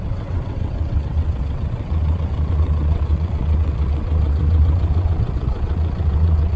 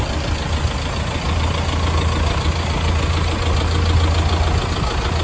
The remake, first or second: first